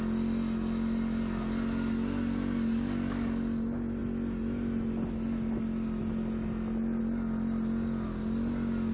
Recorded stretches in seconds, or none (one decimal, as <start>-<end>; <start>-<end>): 0.0-8.9